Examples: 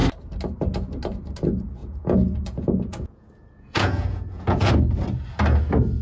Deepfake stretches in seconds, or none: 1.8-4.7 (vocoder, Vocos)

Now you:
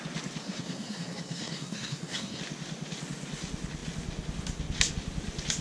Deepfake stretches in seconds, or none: 0.4-2.4 (codec, SNAC)

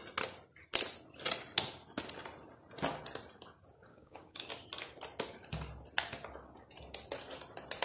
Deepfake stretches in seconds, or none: 3.9-4.5 (codec, DAC)